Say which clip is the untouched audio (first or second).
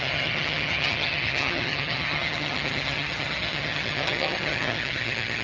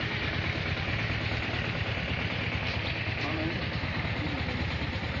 second